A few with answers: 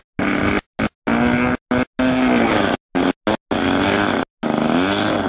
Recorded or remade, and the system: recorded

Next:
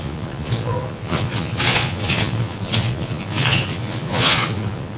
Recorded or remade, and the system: remade, vocoder, Vocos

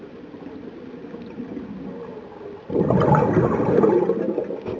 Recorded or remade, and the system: recorded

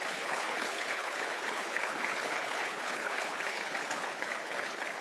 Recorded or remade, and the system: remade, codec, HILCodec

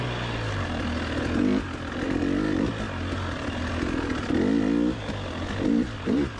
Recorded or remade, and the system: recorded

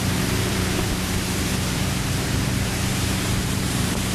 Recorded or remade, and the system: remade, vocoder, BigVGAN v2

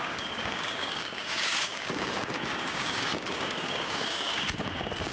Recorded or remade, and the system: remade, codec, DAC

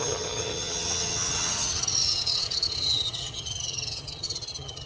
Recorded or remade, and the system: remade, vocoder, HiFi-GAN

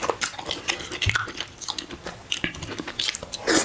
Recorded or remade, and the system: recorded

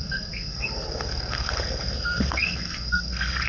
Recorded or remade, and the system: remade, codec, SNAC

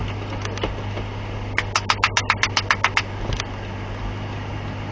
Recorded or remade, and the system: recorded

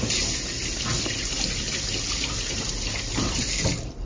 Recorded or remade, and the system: recorded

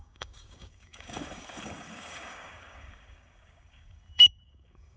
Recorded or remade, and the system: remade, codec, DAC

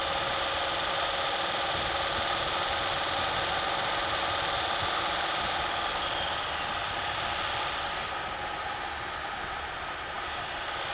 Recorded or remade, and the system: recorded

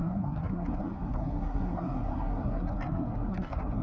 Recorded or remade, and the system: remade, codec, SNAC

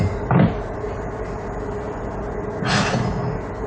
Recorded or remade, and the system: recorded